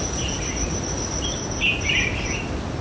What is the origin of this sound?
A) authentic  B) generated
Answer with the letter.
A